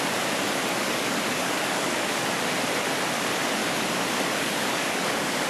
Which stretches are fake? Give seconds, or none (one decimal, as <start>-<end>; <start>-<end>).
0.8-2.2; 3.6-5.5